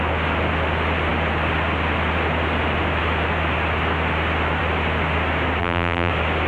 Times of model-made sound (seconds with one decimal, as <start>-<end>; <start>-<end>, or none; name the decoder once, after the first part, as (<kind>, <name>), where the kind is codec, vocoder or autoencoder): 5.6-6.1 (vocoder, BigVGAN v2)